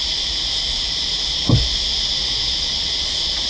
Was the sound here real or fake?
real